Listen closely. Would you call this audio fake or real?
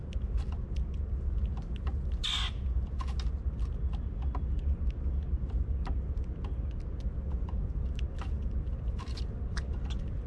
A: real